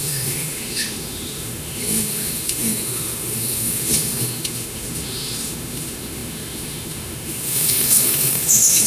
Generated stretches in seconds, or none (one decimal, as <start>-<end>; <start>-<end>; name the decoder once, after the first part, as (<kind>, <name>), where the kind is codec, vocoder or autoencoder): 0.0-8.9 (autoencoder, DAC-VAE)